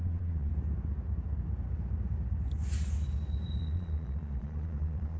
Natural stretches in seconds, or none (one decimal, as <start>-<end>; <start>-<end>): 0.5-3.6